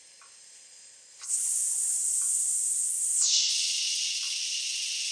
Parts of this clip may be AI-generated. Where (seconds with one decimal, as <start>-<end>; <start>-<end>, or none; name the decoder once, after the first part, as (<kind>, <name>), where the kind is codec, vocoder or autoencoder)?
3.5-5.1 (vocoder, WaveNeXt)